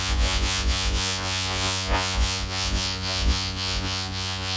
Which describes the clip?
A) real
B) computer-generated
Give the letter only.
B